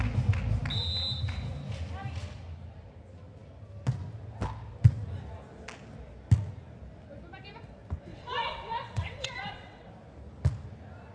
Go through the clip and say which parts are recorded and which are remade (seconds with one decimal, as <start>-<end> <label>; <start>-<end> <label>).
0.0-8.1 recorded; 8.1-9.9 remade; 9.9-11.1 recorded